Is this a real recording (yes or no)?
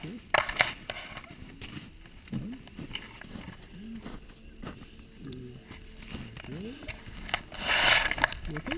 yes